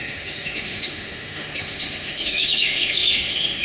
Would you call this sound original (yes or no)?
no